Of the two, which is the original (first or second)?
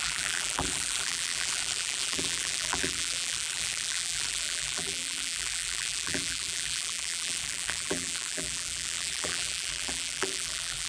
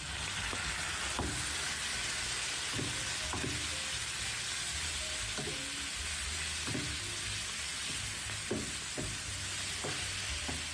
second